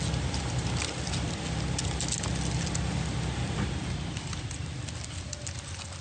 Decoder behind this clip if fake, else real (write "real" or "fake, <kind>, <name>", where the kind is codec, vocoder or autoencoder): real